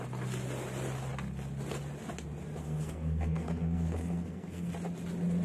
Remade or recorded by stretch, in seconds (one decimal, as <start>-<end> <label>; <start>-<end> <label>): 0.0-2.6 recorded; 2.6-4.7 remade; 4.7-5.4 recorded

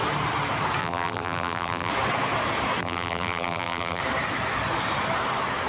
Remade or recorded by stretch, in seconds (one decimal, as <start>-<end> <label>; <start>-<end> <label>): 0.0-0.8 recorded; 0.8-1.9 remade; 1.9-2.8 recorded; 2.8-4.0 remade; 4.0-5.7 recorded

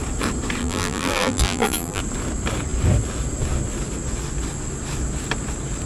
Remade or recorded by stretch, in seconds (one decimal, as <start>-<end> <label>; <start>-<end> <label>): 0.0-0.6 recorded; 0.6-2.0 remade; 2.0-5.9 recorded